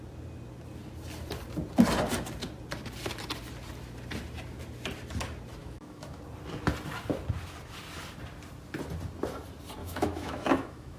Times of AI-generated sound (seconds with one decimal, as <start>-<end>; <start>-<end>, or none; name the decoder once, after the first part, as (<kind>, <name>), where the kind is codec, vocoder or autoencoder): 5.6-6.2 (autoencoder, DAC-VAE); 9.8-11.0

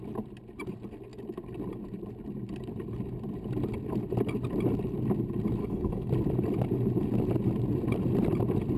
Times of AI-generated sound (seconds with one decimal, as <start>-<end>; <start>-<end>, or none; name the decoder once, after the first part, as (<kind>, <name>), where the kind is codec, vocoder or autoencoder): 5.6-6.1 (codec, SNAC)